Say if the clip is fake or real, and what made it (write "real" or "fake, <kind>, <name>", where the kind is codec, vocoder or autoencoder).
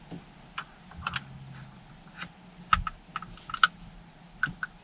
real